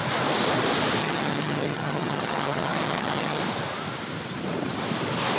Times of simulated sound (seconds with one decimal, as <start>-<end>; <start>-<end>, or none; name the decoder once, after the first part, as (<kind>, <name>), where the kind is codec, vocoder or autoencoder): 1.0-3.4 (vocoder, HiFi-GAN)